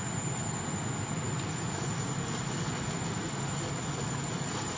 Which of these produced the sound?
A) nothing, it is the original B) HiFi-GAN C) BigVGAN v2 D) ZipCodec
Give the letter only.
A